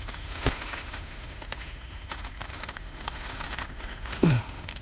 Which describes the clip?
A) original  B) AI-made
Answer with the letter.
B